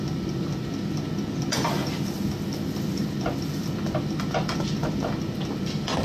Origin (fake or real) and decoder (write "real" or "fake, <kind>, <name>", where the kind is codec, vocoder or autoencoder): real